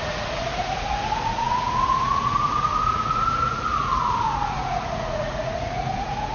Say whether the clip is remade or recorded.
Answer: remade